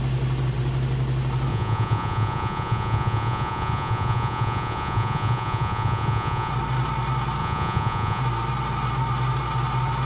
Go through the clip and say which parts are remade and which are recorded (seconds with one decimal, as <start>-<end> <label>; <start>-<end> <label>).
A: 0.0-1.5 recorded; 1.5-6.5 remade; 6.5-7.4 recorded; 7.4-8.2 remade; 8.2-10.1 recorded